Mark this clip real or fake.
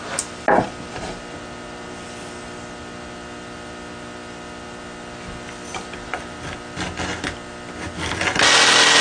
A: real